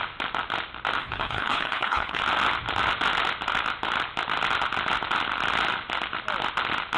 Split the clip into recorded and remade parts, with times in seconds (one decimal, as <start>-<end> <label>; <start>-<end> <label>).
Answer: 0.0-1.0 recorded; 1.0-2.2 remade; 2.2-7.0 recorded